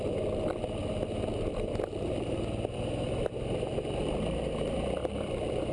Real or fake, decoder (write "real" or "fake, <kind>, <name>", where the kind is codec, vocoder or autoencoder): fake, vocoder, BigVGAN v2